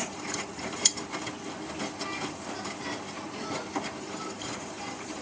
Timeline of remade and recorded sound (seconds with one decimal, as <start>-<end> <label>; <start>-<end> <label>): 0.0-0.9 remade; 0.9-4.0 recorded; 4.0-5.2 remade